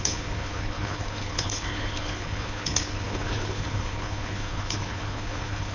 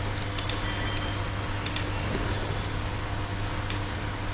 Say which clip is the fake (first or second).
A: first